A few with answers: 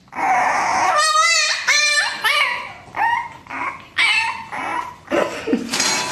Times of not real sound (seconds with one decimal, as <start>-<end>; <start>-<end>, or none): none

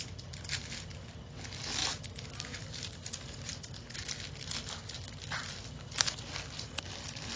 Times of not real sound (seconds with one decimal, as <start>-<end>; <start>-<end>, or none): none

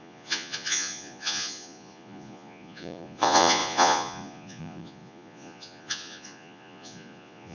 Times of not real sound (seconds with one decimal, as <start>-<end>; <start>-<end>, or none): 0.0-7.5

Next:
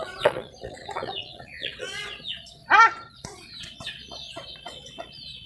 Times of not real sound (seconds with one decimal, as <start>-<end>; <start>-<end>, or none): 0.0-2.6; 3.1-5.5

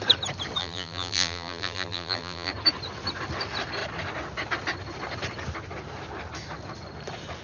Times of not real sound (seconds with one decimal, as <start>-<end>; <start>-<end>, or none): 0.6-2.5

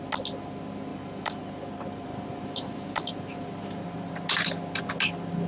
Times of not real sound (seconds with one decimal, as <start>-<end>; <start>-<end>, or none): 0.9-4.1

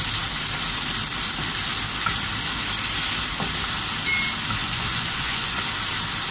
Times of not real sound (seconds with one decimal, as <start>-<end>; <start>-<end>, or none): 4.6-5.6

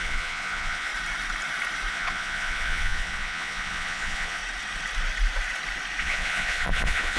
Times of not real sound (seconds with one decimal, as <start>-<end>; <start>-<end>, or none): 0.0-0.9; 1.9-4.4; 6.0-7.2